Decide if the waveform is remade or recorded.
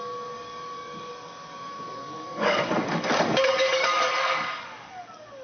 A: remade